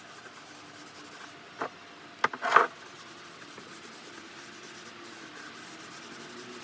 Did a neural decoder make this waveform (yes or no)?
no